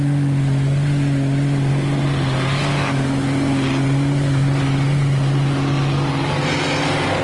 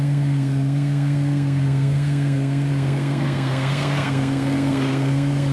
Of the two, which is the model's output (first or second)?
second